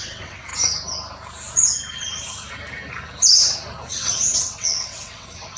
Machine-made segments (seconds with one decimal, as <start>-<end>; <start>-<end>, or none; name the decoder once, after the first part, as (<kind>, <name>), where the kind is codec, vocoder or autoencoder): 0.0-0.5 (vocoder, WaveNeXt); 3.9-5.6